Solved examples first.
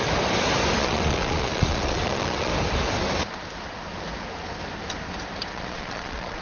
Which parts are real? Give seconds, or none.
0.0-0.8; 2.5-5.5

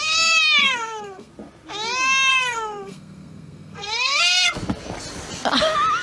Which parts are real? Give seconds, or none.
0.0-0.6; 1.3-2.3; 4.2-6.0

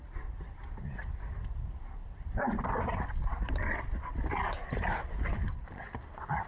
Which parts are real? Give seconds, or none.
0.0-6.5